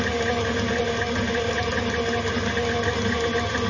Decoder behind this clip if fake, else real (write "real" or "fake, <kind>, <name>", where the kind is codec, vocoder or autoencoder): real